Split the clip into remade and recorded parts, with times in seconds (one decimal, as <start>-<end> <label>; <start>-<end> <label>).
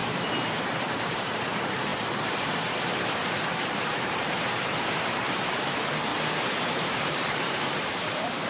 0.0-6.1 remade; 6.1-6.7 recorded; 6.7-8.5 remade